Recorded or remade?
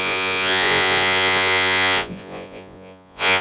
remade